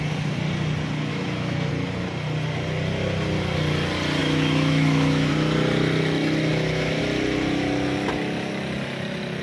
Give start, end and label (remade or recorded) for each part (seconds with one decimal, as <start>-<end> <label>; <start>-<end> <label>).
0.0-1.1 recorded; 1.1-1.7 remade; 1.7-4.2 recorded; 4.2-5.3 remade; 5.3-6.5 recorded; 6.5-7.0 remade; 7.0-9.4 recorded